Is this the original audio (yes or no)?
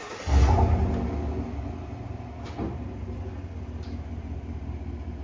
yes